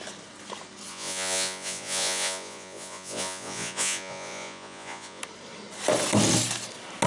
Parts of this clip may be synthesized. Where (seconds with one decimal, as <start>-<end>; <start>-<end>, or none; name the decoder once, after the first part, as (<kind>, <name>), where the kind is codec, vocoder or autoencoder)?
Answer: 0.9-5.2 (vocoder, Vocos)

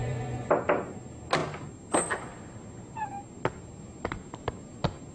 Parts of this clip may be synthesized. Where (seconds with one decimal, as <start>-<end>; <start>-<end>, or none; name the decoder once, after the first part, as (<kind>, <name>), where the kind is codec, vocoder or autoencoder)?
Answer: 0.0-0.5 (vocoder, Vocos)

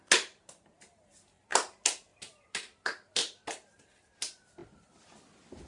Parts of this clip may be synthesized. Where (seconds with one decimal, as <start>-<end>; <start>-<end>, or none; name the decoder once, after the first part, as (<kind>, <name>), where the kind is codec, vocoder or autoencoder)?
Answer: none

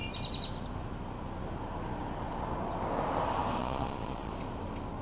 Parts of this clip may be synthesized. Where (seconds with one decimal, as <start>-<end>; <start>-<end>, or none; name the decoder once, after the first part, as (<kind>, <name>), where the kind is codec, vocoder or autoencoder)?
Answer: 3.6-4.3 (vocoder, Vocos)

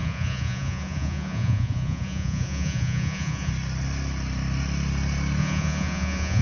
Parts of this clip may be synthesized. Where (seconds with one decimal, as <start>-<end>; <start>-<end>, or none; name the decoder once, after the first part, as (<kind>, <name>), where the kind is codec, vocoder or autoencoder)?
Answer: 0.0-3.5 (vocoder, Vocos); 5.4-6.4

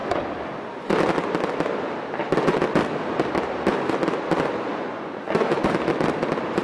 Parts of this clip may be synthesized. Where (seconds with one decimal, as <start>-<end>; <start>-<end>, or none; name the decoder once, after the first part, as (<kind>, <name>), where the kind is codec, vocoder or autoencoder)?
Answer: 4.7-5.2 (vocoder, Vocos)

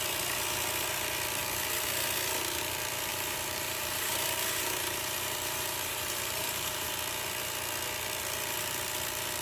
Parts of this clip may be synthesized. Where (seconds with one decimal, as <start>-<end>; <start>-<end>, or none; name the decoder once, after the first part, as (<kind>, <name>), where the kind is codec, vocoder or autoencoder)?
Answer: 3.1-6.9 (vocoder, BigVGAN v2)

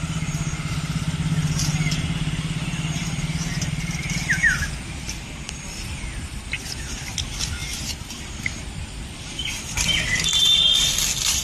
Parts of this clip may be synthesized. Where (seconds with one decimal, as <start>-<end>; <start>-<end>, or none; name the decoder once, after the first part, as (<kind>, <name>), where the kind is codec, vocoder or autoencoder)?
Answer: 7.6-8.5 (vocoder, BigVGAN v2)